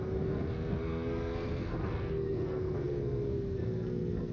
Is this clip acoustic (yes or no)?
no